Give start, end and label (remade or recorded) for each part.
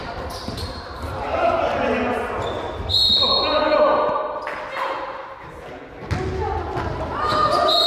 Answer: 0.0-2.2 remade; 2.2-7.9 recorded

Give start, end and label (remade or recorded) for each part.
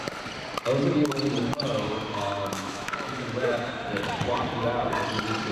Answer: 0.0-1.5 recorded; 1.5-3.7 remade; 3.7-5.5 recorded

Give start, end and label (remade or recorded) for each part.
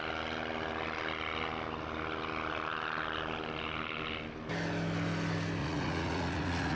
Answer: 0.0-5.6 recorded; 5.6-6.8 remade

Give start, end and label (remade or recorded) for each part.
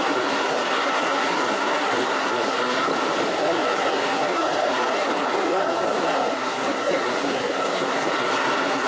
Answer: 0.0-2.9 remade; 2.9-3.4 recorded; 3.4-8.9 remade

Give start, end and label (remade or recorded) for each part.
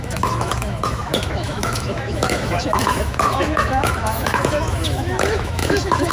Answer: 0.0-6.1 remade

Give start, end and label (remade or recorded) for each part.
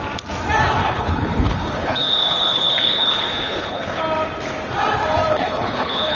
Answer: 0.0-0.8 recorded; 0.8-4.0 remade; 4.0-5.3 recorded; 5.3-6.2 remade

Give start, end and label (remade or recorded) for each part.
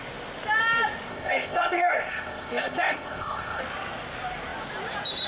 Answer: 0.0-1.1 recorded; 1.1-3.6 remade; 3.6-5.3 recorded